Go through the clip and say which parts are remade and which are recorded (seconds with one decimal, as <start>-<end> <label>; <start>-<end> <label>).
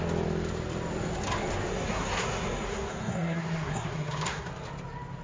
0.0-1.7 recorded; 1.7-4.5 remade; 4.5-5.2 recorded